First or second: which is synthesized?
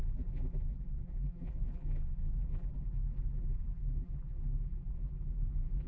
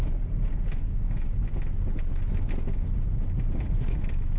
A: first